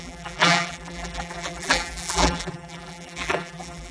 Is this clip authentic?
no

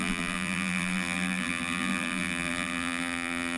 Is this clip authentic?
no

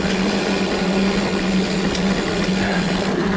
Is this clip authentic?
yes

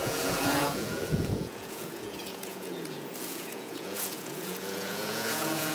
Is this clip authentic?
no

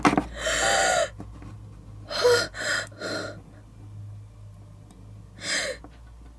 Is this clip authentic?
yes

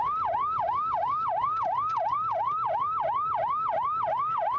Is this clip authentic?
yes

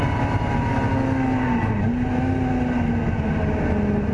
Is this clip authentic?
yes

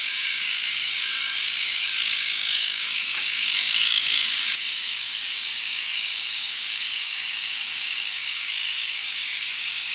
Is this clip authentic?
no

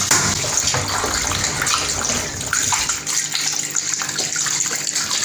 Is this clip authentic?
yes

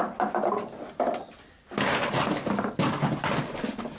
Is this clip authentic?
yes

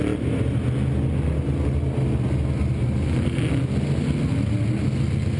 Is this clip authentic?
yes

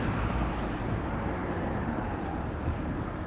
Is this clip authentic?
no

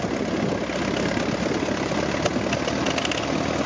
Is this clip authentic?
yes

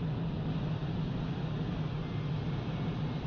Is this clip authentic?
yes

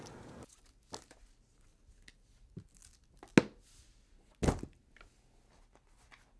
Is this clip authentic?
yes